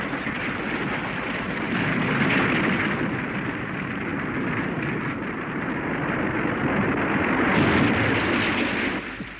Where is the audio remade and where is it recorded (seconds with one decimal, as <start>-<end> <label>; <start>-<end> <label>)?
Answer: 0.0-9.4 recorded